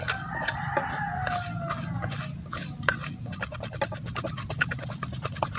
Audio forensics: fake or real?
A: real